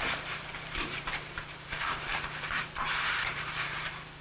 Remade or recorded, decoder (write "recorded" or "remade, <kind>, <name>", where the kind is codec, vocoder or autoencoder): remade, vocoder, BigVGAN v2